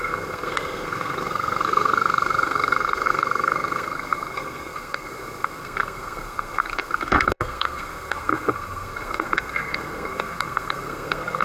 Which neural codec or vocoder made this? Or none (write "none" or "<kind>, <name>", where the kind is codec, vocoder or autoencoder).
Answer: codec, SNAC